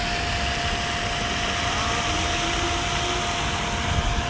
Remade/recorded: recorded